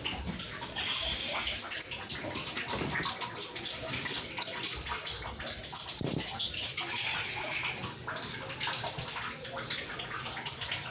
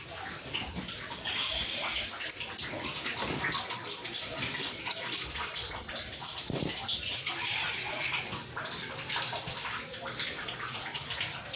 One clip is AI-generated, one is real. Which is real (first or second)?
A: first